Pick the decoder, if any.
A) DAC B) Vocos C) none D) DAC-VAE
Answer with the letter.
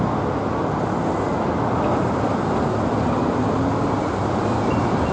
C